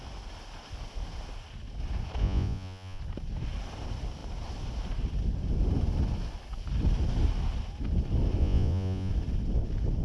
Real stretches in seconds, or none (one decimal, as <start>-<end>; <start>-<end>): 0.0-2.2; 3.0-8.4; 9.1-10.0